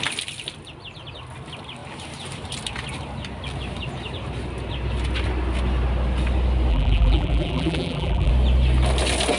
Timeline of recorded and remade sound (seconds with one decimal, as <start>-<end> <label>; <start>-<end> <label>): 0.0-6.7 recorded; 6.7-8.3 remade; 8.3-9.4 recorded